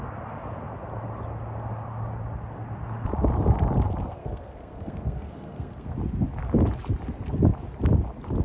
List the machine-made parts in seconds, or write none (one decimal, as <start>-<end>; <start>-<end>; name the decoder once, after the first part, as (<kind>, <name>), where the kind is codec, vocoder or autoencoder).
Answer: 4.2-5.9 (codec, SNAC)